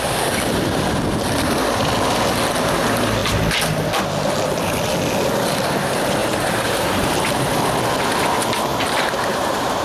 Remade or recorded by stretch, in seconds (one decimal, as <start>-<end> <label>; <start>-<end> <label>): 0.0-6.2 recorded; 6.2-7.5 remade; 7.5-8.7 recorded; 8.7-9.8 remade